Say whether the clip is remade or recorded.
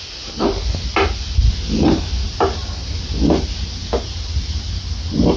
recorded